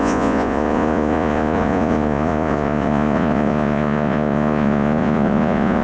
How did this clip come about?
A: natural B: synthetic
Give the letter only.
B